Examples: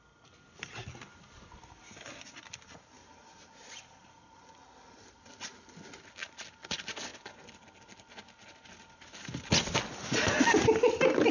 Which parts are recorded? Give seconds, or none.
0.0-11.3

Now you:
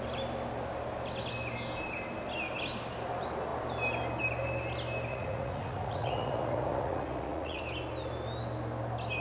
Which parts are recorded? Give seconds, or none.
0.0-5.1; 7.6-9.2

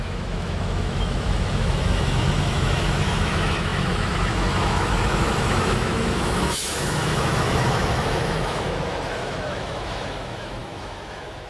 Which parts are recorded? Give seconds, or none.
none

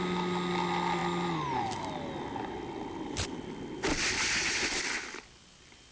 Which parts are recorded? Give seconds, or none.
0.0-5.9

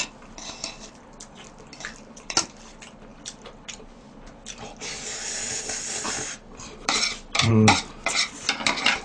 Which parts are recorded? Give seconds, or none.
0.0-3.1; 7.5-9.0